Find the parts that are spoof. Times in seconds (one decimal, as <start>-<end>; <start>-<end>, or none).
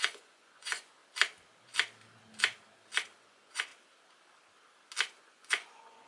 0.0-1.0; 3.2-3.7; 5.2-6.1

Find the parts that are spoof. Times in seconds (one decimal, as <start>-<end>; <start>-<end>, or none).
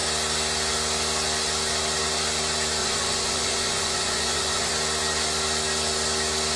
2.8-4.7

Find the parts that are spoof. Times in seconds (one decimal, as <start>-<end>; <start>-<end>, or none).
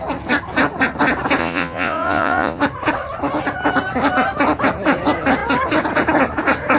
1.4-2.6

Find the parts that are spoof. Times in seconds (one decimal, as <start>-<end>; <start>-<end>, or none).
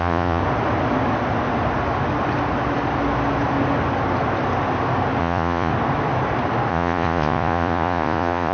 0.0-0.4; 5.2-5.7; 6.7-8.5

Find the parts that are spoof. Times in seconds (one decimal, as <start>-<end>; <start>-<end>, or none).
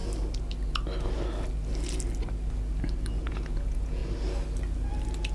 3.2-4.0